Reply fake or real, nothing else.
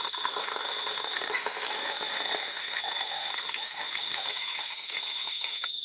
fake